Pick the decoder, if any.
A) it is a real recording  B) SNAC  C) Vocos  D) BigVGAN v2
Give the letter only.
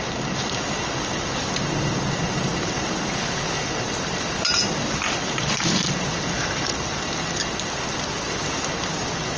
A